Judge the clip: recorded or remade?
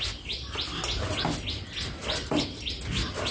recorded